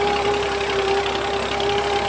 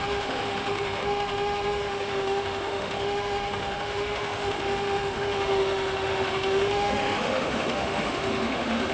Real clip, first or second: first